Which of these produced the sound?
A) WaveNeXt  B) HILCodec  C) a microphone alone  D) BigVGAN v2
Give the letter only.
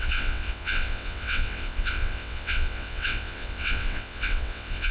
A